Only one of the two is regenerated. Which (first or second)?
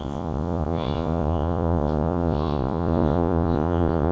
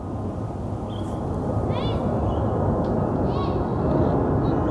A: first